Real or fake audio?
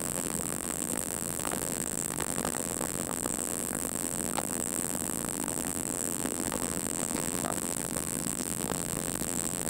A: fake